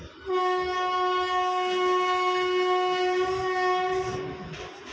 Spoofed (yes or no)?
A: no